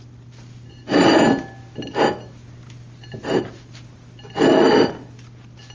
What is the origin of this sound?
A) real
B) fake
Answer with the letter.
A